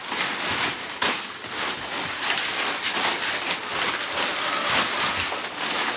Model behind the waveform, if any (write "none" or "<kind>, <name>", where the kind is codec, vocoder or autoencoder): none